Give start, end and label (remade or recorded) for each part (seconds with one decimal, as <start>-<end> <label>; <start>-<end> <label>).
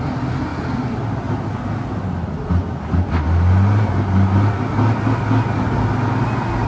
0.0-6.7 recorded